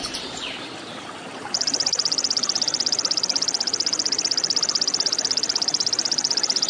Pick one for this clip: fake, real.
fake